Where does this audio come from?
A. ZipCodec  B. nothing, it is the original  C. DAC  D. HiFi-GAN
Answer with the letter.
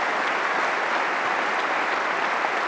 B